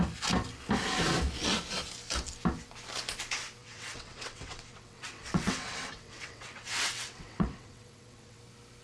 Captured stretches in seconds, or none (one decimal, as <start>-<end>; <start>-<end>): 0.0-3.6; 8.4-8.8